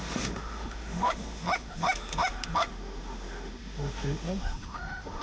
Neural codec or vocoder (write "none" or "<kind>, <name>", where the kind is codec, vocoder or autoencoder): autoencoder, DAC-VAE